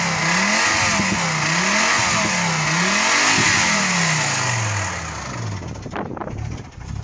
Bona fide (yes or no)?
yes